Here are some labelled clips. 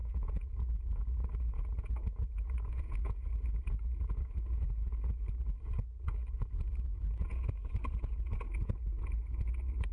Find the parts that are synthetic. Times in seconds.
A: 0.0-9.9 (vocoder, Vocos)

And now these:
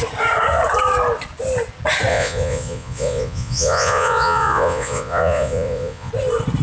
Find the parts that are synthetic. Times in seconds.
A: 2.1-6.1 (vocoder, Vocos)

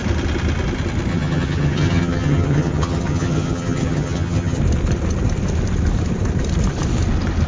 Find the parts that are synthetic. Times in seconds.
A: 1.1-4.6 (vocoder, HiFi-GAN)

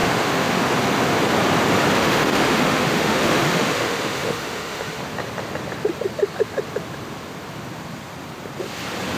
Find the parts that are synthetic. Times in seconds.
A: 0.0-0.6 (autoencoder, DAC-VAE); 2.0-5.0

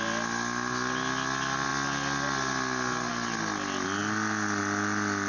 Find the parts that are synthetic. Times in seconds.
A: none

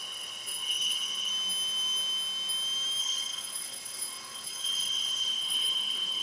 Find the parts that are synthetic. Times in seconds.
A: 0.0-1.3 (codec, HILCodec); 3.0-6.2

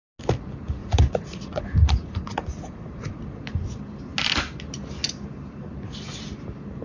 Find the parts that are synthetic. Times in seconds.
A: 0.8-3.4 (vocoder, Vocos)